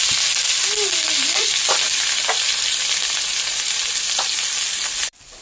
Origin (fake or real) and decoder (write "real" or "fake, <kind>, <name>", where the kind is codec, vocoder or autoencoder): real